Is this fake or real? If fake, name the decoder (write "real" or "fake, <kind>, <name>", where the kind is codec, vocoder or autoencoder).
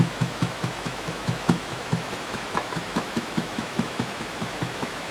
fake, autoencoder, DAC-VAE